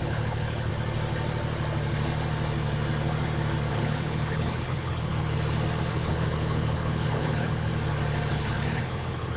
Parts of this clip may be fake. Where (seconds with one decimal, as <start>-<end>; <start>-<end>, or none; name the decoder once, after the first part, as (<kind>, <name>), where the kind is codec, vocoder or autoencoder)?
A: 0.0-0.7 (codec, HILCodec); 3.7-5.1; 5.9-7.7; 8.3-9.4